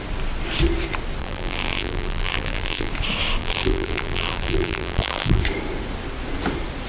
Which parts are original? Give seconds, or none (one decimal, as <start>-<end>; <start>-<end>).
0.0-1.2; 2.9-3.4; 5.4-6.9